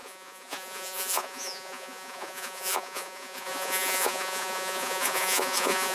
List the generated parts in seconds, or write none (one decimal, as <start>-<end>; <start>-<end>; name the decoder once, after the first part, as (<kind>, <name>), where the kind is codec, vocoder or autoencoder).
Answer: 0.0-5.9 (vocoder, Vocos)